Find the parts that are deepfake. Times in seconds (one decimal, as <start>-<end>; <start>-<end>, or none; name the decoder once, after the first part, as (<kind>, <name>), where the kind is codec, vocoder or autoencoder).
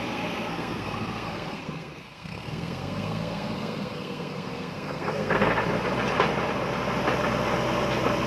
0.0-5.6 (codec, SNAC)